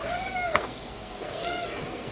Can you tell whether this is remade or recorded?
remade